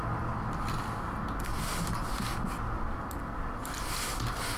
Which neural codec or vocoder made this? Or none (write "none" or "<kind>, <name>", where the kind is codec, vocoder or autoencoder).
none